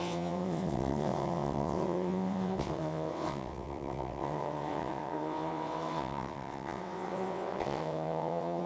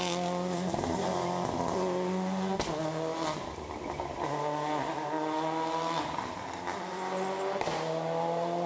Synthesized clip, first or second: first